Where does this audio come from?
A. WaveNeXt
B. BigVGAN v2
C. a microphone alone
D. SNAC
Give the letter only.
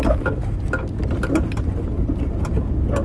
C